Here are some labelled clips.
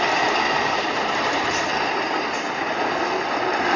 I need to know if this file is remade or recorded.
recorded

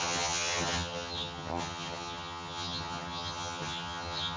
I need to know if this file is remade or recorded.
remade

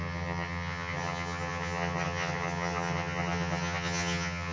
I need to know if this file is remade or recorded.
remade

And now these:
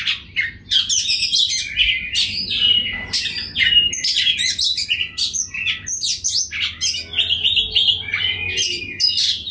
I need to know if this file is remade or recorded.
recorded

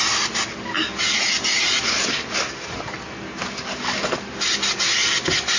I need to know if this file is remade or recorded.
recorded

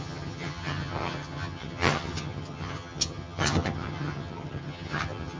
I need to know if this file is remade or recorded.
remade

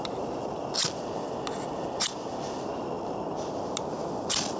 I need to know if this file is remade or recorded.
recorded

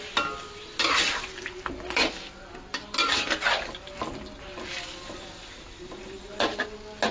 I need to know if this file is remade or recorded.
recorded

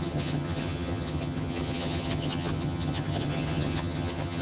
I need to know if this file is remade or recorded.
remade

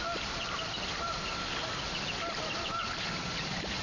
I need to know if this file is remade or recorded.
recorded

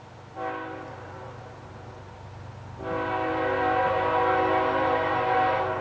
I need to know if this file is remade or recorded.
recorded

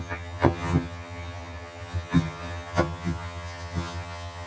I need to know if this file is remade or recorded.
remade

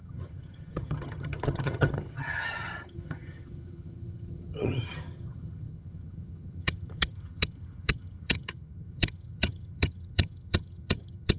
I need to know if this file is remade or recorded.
remade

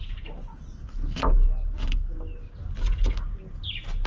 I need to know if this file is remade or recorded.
recorded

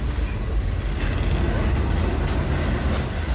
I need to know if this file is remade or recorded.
recorded